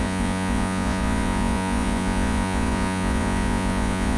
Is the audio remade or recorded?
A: remade